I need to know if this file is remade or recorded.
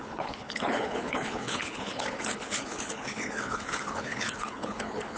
remade